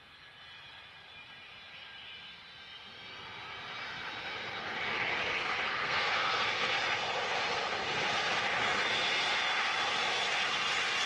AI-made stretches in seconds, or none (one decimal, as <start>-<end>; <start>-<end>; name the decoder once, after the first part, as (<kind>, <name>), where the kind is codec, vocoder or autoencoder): 5.8-6.7 (codec, SNAC)